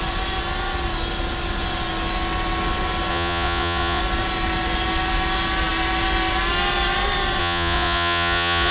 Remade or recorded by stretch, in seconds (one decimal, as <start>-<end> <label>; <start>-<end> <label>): 0.0-3.1 recorded; 3.1-4.0 remade; 4.0-7.4 recorded; 7.4-8.7 remade